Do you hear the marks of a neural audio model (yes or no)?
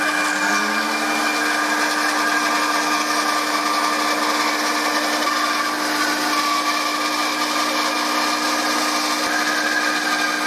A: no